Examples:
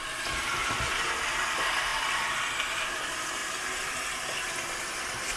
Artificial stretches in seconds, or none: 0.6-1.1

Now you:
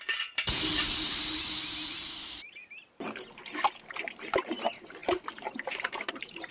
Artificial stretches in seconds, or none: 0.8-2.6; 3.9-6.5